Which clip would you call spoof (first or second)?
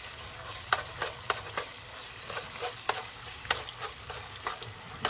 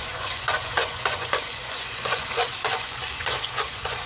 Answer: second